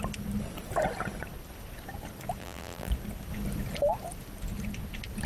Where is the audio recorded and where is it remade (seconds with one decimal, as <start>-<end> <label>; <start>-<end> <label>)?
0.0-2.4 recorded; 2.4-2.9 remade; 2.9-5.3 recorded